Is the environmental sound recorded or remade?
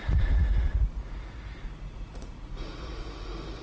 remade